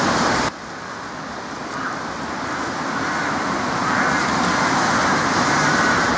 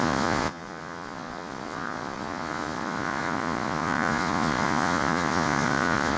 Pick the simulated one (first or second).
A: second